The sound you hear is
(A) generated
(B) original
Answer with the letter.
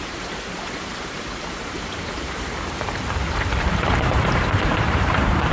A